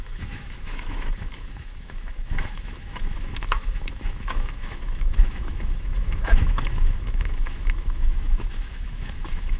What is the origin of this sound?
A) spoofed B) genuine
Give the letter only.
A